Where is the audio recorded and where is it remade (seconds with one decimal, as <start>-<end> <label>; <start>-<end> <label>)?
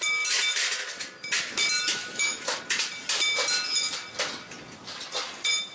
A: 0.0-1.9 recorded; 1.9-2.6 remade; 2.6-5.7 recorded